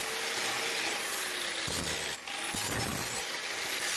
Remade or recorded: recorded